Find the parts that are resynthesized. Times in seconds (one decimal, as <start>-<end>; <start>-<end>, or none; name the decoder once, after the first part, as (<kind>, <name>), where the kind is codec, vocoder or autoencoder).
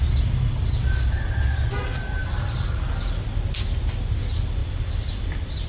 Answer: 0.0-1.2 (vocoder, BigVGAN v2); 2.2-2.9; 4.6-5.3